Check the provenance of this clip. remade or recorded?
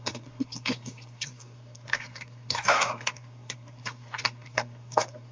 remade